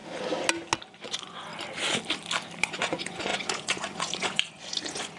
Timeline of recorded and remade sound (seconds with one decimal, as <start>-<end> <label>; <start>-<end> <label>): 0.0-0.9 recorded; 0.9-1.5 remade; 1.5-2.6 recorded; 2.6-5.2 remade